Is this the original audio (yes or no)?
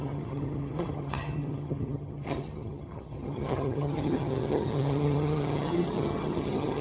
no